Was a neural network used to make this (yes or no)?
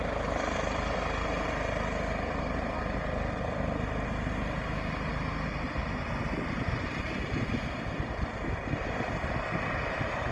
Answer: no